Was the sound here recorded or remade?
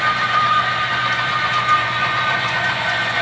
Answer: remade